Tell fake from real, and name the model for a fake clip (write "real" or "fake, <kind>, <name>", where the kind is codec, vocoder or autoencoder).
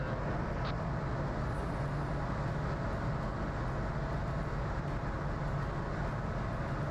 real